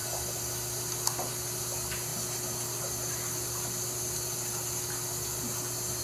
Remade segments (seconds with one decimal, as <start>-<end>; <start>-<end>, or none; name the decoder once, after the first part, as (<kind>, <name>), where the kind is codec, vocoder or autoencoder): none